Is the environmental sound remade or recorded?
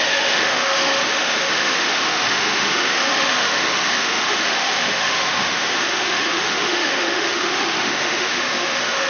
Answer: remade